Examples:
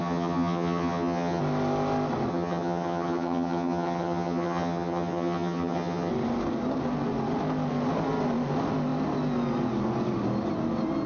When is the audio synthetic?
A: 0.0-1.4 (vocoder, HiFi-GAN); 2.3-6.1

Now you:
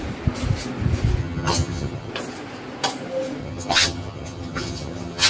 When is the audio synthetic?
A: 1.2-2.1 (vocoder, HiFi-GAN); 3.4-5.3